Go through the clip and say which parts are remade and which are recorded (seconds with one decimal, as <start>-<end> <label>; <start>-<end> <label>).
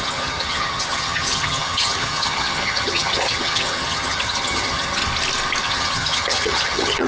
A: 0.0-5.0 remade; 5.0-5.6 recorded; 5.6-7.1 remade